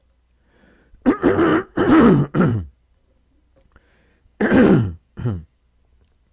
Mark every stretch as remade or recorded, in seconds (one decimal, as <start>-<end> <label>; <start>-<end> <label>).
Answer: 0.0-4.1 recorded; 4.1-5.6 remade; 5.6-6.3 recorded